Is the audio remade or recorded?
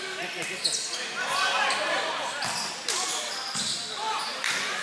recorded